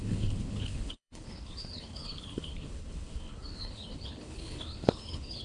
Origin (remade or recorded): remade